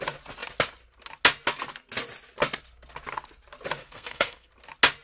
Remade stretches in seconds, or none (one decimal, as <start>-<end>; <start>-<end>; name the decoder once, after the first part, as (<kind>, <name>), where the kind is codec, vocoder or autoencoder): 3.8-4.5 (codec, SNAC)